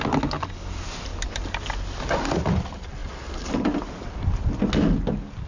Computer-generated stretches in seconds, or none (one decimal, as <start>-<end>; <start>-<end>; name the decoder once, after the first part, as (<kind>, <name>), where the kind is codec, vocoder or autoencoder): none